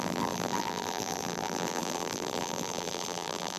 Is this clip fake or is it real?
fake